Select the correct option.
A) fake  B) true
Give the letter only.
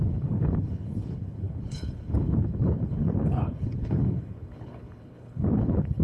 A